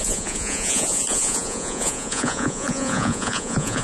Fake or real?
fake